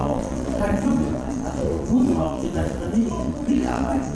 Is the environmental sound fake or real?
fake